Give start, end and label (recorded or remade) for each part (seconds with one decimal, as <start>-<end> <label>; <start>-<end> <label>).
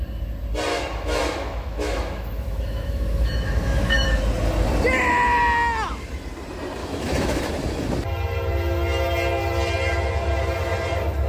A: 0.0-0.7 recorded; 0.7-4.2 remade; 4.2-6.8 recorded; 6.8-7.5 remade; 7.5-11.3 recorded